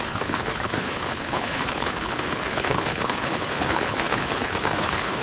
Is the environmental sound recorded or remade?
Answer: remade